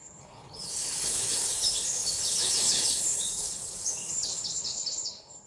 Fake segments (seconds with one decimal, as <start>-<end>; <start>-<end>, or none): 0.0-5.5

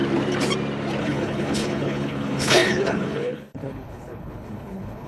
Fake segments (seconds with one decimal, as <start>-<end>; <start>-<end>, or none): 1.0-5.1

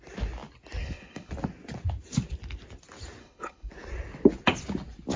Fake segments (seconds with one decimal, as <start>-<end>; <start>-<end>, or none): 0.8-1.3; 3.2-3.7

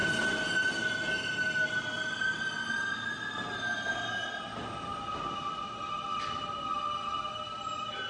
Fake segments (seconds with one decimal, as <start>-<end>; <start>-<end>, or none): none

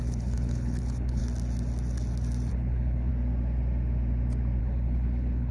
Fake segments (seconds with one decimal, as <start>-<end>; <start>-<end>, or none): 0.0-1.2; 2.5-3.1; 4.6-5.5

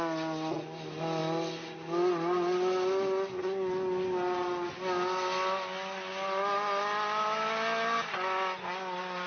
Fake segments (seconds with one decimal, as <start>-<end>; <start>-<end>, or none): none

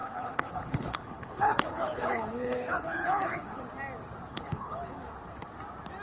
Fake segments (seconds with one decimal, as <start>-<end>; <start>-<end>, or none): 0.0-3.6; 4.3-5.0

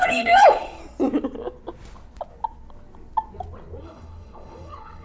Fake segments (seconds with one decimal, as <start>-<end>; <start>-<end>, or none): 0.0-0.8; 3.8-5.0